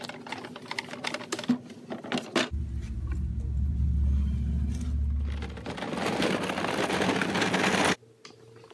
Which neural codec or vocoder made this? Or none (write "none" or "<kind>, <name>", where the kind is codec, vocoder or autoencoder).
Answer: none